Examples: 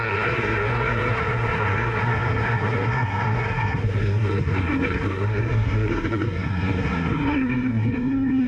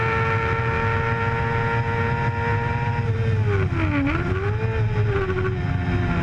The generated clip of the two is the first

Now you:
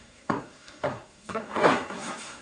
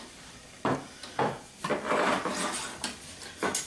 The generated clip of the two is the first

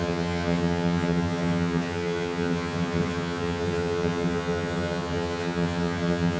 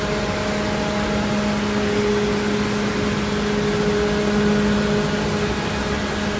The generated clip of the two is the first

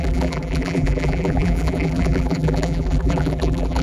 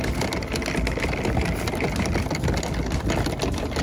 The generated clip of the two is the first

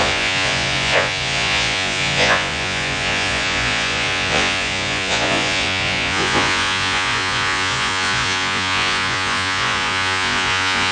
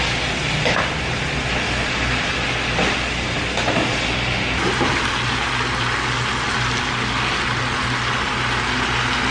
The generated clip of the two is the first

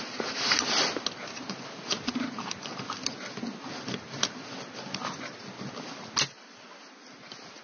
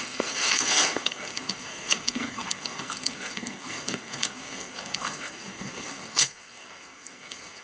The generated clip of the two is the second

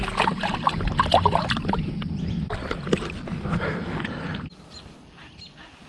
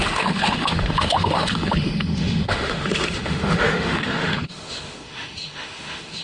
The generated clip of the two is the second